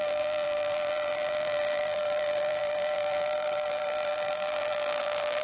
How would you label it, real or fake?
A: fake